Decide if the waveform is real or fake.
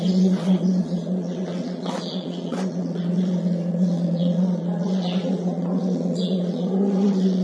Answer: fake